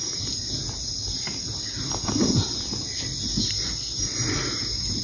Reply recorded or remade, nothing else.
recorded